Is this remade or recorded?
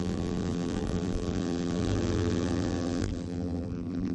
remade